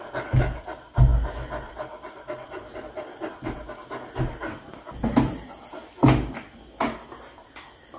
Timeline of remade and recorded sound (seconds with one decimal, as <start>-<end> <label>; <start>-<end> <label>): 0.0-8.0 recorded